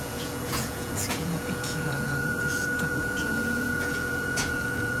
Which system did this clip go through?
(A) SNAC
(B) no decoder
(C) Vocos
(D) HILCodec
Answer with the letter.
C